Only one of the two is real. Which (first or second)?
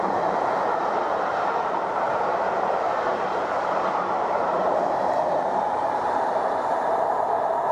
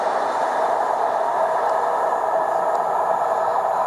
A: second